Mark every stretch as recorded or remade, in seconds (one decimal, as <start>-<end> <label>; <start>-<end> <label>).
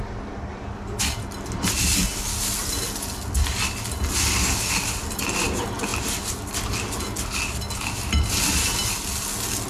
0.0-9.7 recorded